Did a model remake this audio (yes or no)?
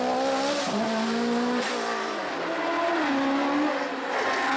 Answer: no